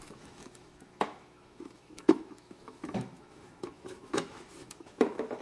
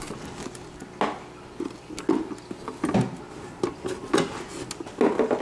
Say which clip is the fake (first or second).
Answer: first